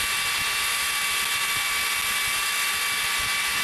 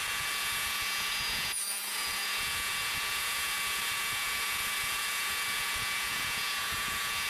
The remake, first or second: second